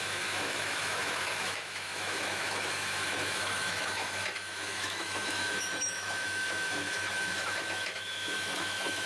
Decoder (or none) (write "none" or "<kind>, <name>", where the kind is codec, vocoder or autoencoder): autoencoder, DAC-VAE